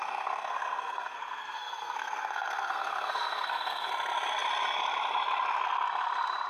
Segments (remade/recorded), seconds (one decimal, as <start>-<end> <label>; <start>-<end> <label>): 0.0-3.9 remade; 3.9-6.5 recorded